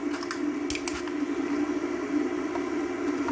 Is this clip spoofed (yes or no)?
no